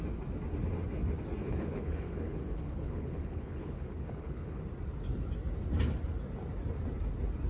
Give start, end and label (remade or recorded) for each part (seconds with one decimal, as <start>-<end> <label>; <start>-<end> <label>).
0.0-1.4 recorded; 1.4-4.6 remade; 4.6-7.5 recorded